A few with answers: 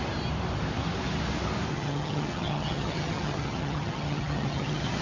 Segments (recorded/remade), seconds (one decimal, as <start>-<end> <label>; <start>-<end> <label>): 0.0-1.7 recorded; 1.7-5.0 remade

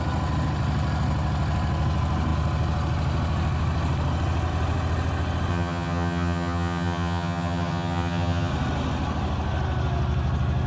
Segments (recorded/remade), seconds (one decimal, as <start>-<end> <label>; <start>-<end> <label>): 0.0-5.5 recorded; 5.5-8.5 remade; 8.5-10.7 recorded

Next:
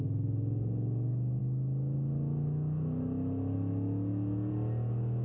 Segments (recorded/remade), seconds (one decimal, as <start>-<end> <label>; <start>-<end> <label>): 0.0-5.2 recorded

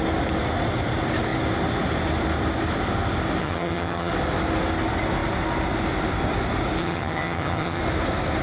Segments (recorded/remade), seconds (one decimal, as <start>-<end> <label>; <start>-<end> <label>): 0.0-3.4 recorded; 3.4-4.1 remade; 4.1-6.8 recorded; 6.8-7.8 remade; 7.8-8.4 recorded

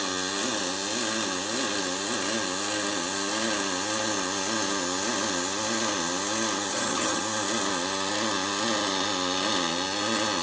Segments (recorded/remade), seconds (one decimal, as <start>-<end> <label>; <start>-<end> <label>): 0.0-6.7 recorded; 6.7-7.2 remade; 7.2-10.4 recorded

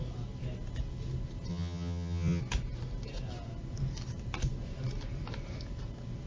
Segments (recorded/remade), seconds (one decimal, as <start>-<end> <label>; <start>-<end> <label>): 0.0-1.5 recorded; 1.5-2.4 remade; 2.4-6.3 recorded

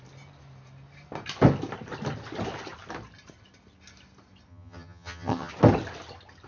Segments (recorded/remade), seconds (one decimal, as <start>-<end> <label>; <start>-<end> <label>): 0.0-4.5 recorded; 4.5-5.5 remade; 5.5-6.5 recorded